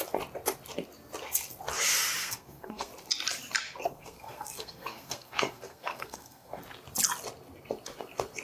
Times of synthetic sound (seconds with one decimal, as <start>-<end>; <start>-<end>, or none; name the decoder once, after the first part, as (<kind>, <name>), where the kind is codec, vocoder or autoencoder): 2.2-2.9 (codec, SNAC); 3.9-6.6